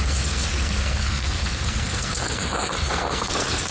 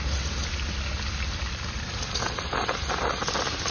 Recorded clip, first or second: second